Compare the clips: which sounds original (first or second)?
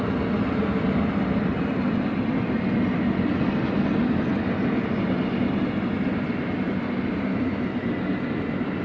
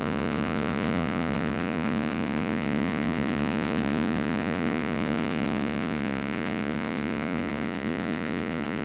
first